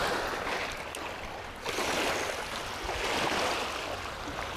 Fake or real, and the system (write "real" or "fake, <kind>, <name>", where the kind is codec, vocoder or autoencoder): real